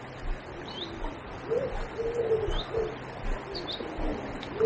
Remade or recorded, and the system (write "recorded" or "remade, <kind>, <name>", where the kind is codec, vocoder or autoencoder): recorded